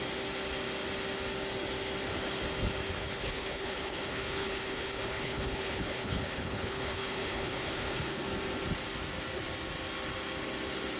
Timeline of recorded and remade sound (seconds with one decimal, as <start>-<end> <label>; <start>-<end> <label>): 0.0-3.0 recorded; 3.0-8.2 remade; 8.2-11.0 recorded